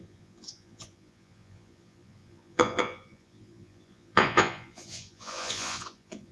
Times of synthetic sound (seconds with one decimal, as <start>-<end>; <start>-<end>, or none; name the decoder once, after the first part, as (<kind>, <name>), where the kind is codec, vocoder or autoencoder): 0.0-6.3 (vocoder, Vocos)

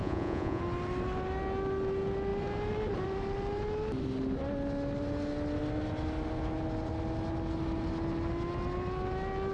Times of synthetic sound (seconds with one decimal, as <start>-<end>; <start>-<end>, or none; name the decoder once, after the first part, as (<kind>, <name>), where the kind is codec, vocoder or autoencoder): 0.0-0.6 (vocoder, Vocos)

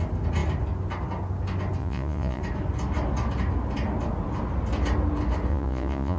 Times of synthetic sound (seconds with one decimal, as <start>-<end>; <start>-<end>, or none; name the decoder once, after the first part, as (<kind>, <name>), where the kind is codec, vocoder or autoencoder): 1.8-2.4 (vocoder, Vocos); 5.5-6.2

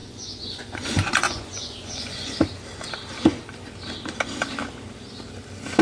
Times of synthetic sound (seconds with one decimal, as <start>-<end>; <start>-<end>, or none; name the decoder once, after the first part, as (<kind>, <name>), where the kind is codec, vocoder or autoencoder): 0.0-2.3 (vocoder, Vocos)

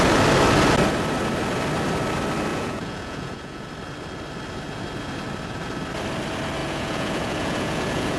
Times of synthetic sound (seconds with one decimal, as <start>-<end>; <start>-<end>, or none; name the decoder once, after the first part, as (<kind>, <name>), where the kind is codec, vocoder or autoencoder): 2.5-3.7 (vocoder, Vocos); 6.6-8.2

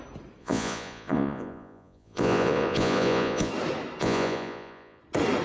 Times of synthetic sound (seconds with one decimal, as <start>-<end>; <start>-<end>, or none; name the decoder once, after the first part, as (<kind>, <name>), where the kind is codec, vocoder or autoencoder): 0.4-3.5 (vocoder, Vocos); 4.0-5.0

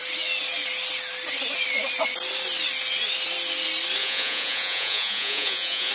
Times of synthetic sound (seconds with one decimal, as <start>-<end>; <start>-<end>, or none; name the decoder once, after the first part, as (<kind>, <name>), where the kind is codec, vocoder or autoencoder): 4.0-5.9 (vocoder, Vocos)

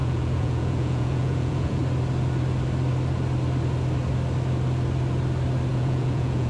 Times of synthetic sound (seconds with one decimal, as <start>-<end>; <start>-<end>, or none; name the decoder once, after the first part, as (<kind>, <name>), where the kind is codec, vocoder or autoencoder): 0.0-1.8 (vocoder, Vocos); 5.7-6.5